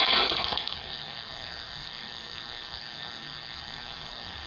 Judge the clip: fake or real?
fake